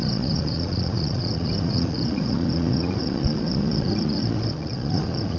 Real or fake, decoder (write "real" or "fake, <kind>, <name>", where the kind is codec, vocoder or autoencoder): fake, vocoder, Vocos